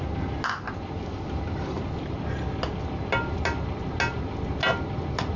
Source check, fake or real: real